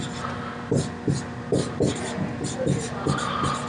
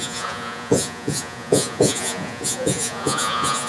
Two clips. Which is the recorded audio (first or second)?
first